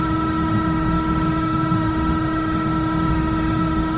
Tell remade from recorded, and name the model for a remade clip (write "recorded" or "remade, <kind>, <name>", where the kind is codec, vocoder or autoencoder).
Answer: remade, autoencoder, DAC-VAE